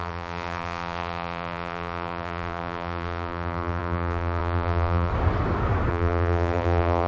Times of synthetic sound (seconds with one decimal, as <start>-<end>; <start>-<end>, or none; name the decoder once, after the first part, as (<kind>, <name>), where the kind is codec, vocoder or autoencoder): 0.0-5.1 (vocoder, BigVGAN v2); 5.9-7.1